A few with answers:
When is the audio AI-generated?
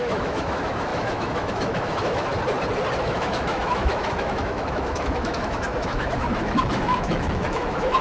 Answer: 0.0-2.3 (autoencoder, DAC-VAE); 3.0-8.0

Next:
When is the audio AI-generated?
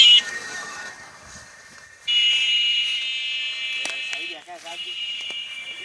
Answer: 0.0-3.0 (autoencoder, DAC-VAE); 4.7-5.8